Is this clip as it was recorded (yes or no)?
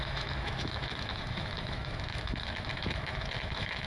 no